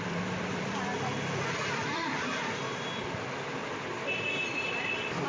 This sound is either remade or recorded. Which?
remade